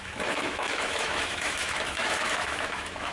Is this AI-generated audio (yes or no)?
yes